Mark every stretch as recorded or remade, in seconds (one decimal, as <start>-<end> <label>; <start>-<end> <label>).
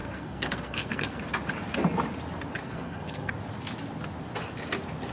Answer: 0.0-1.2 remade; 1.2-2.6 recorded; 2.6-3.3 remade; 3.3-5.1 recorded